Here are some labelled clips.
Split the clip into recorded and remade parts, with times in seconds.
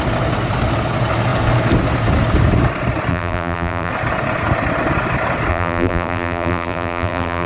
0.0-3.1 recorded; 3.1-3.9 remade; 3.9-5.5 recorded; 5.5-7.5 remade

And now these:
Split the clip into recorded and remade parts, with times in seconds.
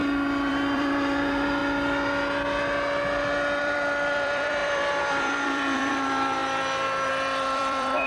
0.0-0.5 recorded; 0.5-1.6 remade; 1.6-3.6 recorded; 3.6-6.4 remade; 6.4-7.1 recorded; 7.1-8.1 remade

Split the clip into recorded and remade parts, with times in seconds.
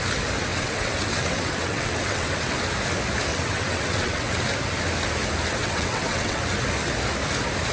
0.0-0.5 recorded; 0.5-2.5 remade; 2.5-3.3 recorded; 3.3-4.4 remade; 4.4-5.6 recorded; 5.6-6.4 remade; 6.4-7.7 recorded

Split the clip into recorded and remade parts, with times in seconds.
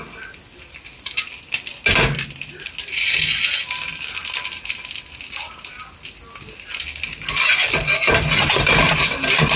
0.0-9.6 recorded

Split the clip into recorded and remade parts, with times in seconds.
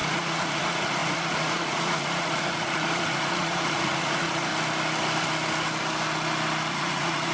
0.0-4.5 remade; 4.5-6.7 recorded; 6.7-7.3 remade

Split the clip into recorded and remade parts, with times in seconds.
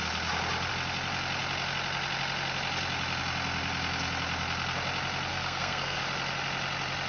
0.0-5.3 recorded; 5.3-6.0 remade; 6.0-7.1 recorded